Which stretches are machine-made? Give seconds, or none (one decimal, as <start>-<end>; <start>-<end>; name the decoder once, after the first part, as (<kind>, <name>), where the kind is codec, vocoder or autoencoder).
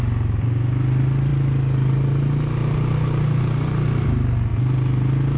none